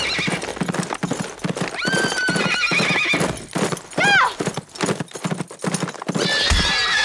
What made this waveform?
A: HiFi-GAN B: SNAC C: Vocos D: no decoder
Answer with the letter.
D